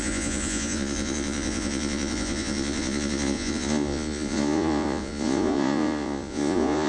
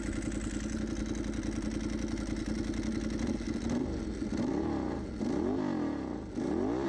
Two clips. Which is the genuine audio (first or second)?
second